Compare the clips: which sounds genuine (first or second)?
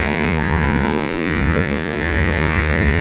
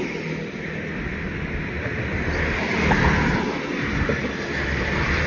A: second